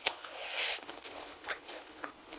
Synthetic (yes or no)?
yes